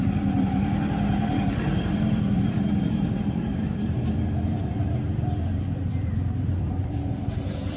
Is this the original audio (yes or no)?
no